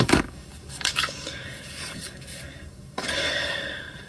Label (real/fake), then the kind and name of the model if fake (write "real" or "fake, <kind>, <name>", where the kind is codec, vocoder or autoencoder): fake, codec, DAC